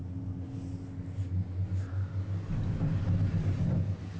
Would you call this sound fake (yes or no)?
no